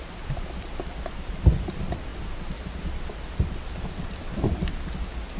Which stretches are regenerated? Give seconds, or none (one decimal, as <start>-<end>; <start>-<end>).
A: none